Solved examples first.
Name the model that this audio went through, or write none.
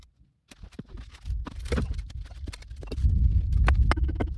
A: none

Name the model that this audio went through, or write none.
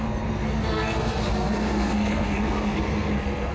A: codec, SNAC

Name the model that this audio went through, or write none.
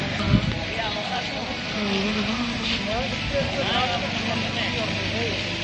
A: none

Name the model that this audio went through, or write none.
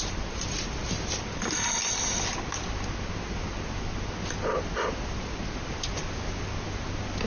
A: none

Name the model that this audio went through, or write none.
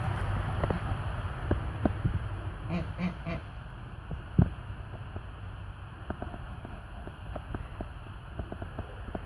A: none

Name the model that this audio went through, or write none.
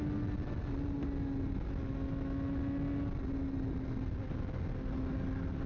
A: none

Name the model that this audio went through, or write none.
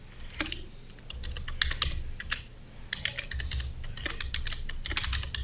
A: none